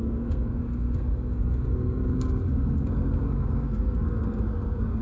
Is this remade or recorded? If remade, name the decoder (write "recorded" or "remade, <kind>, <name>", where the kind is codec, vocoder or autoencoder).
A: remade, codec, SNAC